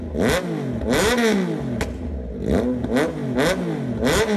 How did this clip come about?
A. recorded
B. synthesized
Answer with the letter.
A